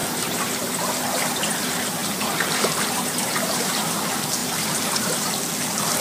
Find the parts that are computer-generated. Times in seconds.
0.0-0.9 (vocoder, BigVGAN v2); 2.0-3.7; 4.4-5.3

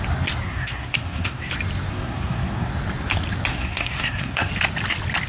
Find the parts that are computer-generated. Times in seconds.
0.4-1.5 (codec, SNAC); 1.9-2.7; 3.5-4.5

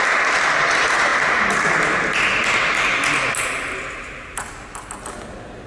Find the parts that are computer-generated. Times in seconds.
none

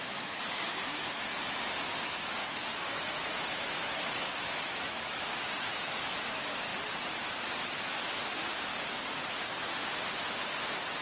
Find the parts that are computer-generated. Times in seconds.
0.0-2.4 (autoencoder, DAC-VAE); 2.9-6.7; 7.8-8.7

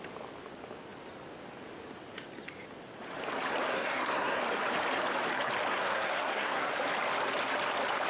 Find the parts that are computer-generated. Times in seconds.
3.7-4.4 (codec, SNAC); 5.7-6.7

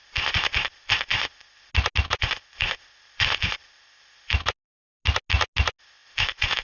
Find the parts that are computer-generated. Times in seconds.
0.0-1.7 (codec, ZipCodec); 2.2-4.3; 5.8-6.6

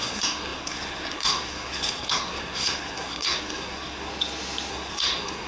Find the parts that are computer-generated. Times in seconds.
0.0-4.1 (codec, SNAC); 4.7-5.5

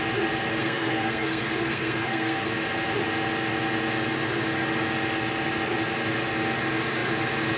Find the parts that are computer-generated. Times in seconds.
0.6-2.5 (codec, SNAC)